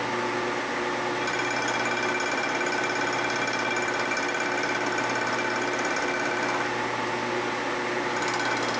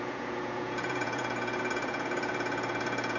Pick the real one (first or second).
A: first